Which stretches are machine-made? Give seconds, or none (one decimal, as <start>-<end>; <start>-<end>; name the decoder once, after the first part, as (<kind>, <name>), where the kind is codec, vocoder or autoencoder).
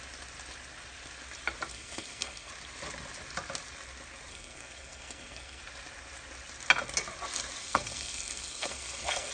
1.7-2.5 (codec, SNAC); 4.3-5.6; 7.6-9.3